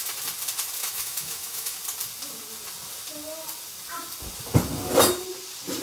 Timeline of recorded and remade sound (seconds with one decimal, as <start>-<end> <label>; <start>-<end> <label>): 0.0-0.8 recorded; 0.8-1.8 remade; 1.8-5.8 recorded